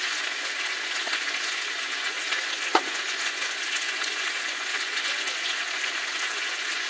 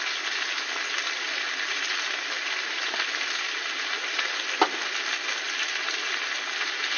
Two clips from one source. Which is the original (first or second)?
second